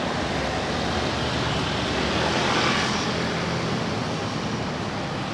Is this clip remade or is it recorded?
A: recorded